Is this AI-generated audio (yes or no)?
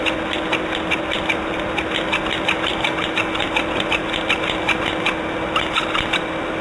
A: no